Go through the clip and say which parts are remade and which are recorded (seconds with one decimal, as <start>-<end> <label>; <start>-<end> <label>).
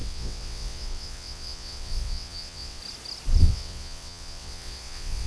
0.0-2.8 remade; 2.8-3.4 recorded; 3.4-5.3 remade